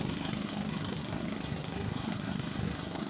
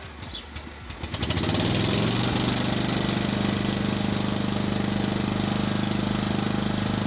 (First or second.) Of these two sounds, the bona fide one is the second